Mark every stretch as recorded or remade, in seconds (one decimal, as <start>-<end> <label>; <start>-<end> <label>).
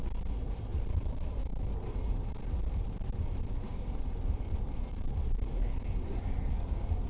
0.0-0.7 recorded; 0.7-1.5 remade; 1.5-3.2 recorded; 3.2-5.4 remade; 5.4-7.1 recorded